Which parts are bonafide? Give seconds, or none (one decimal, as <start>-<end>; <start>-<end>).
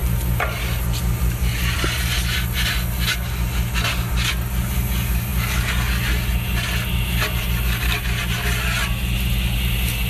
0.0-10.1